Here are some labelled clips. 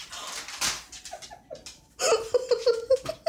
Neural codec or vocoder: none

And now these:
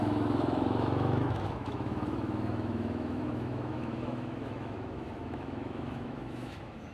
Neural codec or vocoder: autoencoder, DAC-VAE